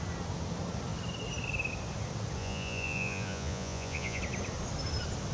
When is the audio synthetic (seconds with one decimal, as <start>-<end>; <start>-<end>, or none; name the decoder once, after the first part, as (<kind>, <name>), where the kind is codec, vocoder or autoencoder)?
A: 2.4-4.2 (vocoder, Vocos)